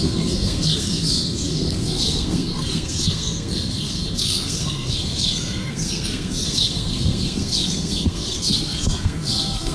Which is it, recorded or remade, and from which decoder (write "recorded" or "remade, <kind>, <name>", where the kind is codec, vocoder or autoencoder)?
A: remade, codec, SNAC